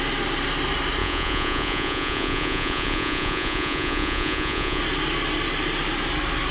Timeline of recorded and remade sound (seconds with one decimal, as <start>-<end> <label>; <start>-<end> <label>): 0.0-1.0 recorded; 1.0-4.8 remade; 4.8-6.5 recorded